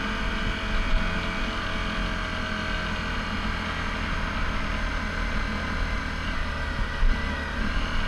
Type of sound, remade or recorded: recorded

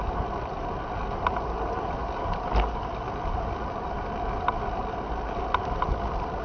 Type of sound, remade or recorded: recorded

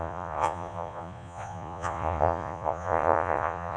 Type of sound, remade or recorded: remade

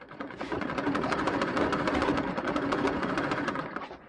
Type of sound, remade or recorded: remade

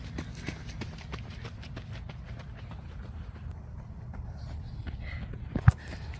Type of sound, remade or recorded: recorded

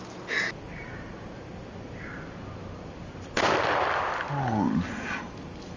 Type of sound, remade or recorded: recorded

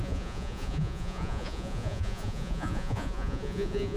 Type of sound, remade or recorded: remade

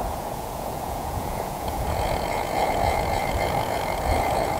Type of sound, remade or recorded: remade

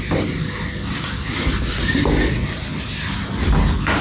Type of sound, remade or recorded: recorded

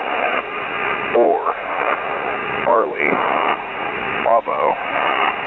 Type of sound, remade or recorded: remade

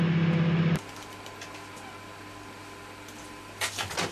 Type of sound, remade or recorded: recorded